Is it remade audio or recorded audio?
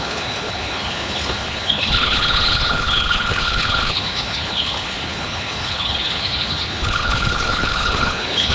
remade